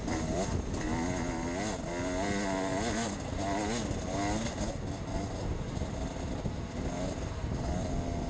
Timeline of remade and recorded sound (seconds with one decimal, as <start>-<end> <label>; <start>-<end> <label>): 0.0-8.3 recorded